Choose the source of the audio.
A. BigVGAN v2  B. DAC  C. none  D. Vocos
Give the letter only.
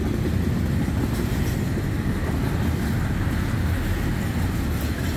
C